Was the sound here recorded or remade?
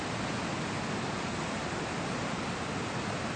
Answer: recorded